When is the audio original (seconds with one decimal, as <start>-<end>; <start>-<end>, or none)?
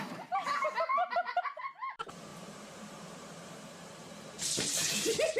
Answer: 0.9-1.9